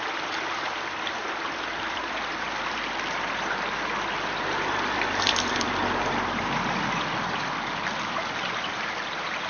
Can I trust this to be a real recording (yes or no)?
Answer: yes